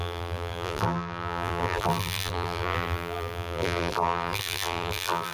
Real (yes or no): no